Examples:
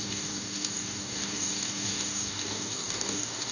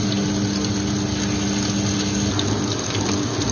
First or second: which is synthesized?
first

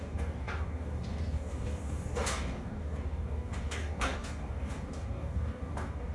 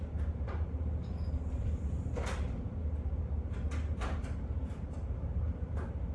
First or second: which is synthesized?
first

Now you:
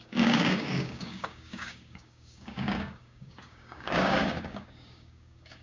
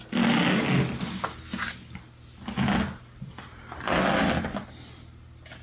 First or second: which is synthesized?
first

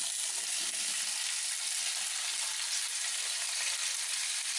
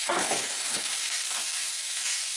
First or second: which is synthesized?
second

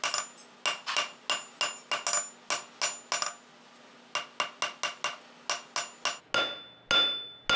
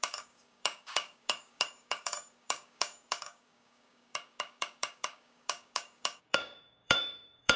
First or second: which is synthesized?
second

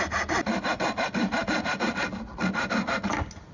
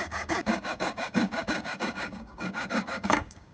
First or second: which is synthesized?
second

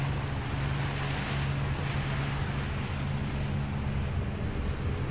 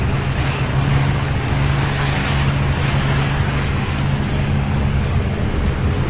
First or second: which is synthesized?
second